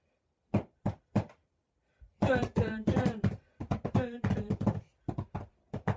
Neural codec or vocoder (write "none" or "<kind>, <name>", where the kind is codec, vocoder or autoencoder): vocoder, BigVGAN v2